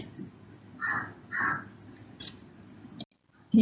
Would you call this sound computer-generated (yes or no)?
no